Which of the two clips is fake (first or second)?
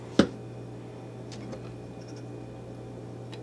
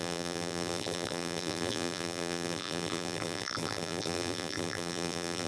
second